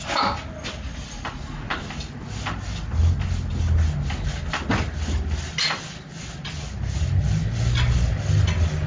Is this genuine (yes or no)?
yes